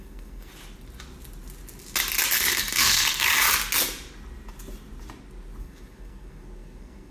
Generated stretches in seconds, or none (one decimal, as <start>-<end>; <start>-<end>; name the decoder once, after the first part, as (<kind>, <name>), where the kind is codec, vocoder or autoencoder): 0.0-0.5 (codec, SNAC); 2.5-3.3; 5.6-7.1